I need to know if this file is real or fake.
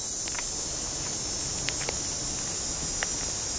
real